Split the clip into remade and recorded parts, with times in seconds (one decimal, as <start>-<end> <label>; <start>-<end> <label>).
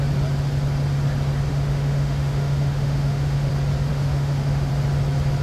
0.0-1.5 recorded; 1.5-3.5 remade; 3.5-3.9 recorded; 3.9-4.7 remade; 4.7-5.4 recorded